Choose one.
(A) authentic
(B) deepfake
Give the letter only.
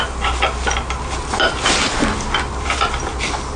A